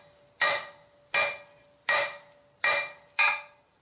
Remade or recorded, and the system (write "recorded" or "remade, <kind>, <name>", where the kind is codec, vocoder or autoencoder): recorded